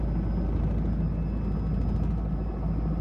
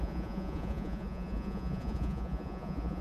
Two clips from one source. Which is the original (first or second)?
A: first